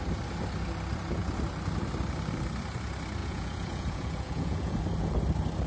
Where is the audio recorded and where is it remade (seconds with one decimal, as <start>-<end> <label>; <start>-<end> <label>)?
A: 0.0-3.2 recorded; 3.2-4.8 remade; 4.8-5.7 recorded